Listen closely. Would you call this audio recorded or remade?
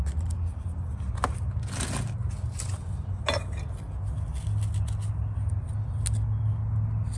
recorded